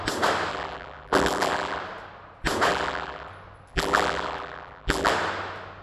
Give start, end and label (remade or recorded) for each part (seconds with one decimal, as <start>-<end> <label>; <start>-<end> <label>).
0.0-0.5 recorded; 0.5-1.8 remade; 1.8-2.7 recorded; 2.7-3.3 remade; 3.3-3.7 recorded; 3.7-5.1 remade; 5.1-5.8 recorded

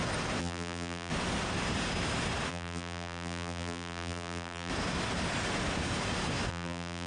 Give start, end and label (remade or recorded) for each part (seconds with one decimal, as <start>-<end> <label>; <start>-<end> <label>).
0.0-0.4 recorded; 0.4-1.1 remade; 1.1-2.5 recorded; 2.5-4.7 remade; 4.7-6.5 recorded; 6.5-7.1 remade

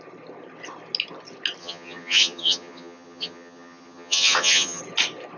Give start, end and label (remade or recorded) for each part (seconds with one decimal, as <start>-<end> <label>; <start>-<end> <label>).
0.0-1.6 recorded; 1.6-4.8 remade; 4.8-5.4 recorded

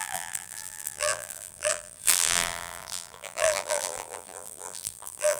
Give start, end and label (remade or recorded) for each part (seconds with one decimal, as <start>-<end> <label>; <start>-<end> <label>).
0.0-5.4 remade

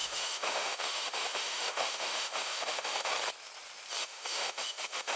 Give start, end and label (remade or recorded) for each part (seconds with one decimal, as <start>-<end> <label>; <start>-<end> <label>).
0.0-3.1 remade; 3.1-4.0 recorded; 4.0-5.2 remade

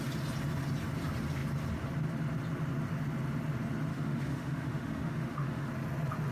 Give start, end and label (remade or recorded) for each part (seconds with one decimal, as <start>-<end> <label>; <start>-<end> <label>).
0.0-3.9 recorded; 3.9-5.7 remade; 5.7-6.3 recorded